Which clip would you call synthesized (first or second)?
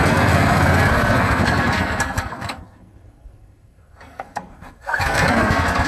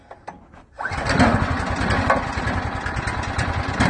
first